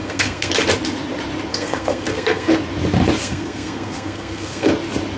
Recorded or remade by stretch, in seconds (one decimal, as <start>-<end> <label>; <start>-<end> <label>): 0.0-0.5 remade; 0.5-1.5 recorded; 1.5-2.5 remade; 2.5-3.2 recorded; 3.2-4.7 remade; 4.7-5.2 recorded